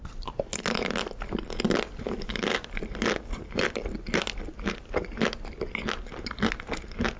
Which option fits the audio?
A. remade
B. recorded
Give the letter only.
B